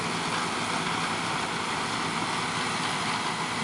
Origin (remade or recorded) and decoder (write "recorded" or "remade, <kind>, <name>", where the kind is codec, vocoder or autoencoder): recorded